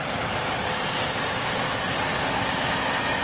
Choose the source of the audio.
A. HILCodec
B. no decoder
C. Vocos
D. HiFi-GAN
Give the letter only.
B